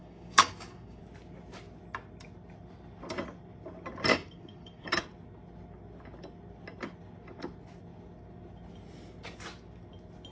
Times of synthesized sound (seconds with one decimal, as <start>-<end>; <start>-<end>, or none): 0.0-1.0; 4.1-5.0